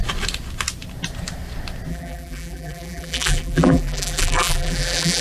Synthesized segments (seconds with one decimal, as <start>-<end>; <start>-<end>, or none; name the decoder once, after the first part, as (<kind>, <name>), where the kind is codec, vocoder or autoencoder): 1.9-5.2 (vocoder, BigVGAN v2)

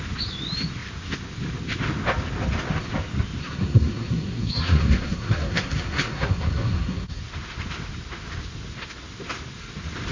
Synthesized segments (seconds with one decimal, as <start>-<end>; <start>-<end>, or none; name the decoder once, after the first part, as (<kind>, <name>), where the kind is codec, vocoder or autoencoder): 3.4-7.2 (codec, SNAC)

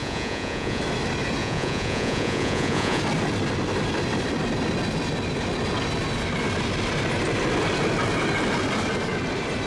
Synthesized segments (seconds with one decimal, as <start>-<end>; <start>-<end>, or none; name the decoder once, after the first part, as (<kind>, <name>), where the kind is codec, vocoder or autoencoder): 0.0-0.8 (vocoder, Vocos); 1.4-3.0

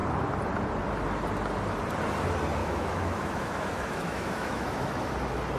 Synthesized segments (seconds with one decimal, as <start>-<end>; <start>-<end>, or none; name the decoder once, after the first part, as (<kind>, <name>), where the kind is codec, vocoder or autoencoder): 2.6-5.1 (autoencoder, DAC-VAE)

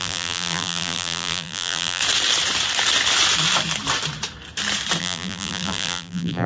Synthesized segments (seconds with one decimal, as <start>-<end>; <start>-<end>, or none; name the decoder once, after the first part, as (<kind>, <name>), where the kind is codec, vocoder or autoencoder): 0.0-2.0 (vocoder, BigVGAN v2); 5.0-6.5

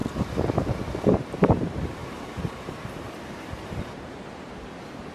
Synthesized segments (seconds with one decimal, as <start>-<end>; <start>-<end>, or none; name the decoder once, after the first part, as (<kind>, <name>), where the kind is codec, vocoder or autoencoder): 1.1-5.1 (vocoder, BigVGAN v2)

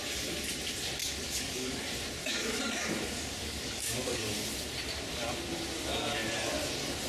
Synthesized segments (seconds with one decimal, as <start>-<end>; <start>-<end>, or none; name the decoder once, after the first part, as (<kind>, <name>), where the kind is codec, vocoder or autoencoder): 1.0-1.8 (codec, DAC); 2.2-4.2